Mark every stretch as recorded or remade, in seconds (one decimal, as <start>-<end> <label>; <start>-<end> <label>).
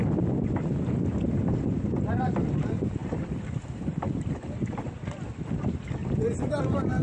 0.0-3.0 recorded; 3.0-4.6 remade; 4.6-7.0 recorded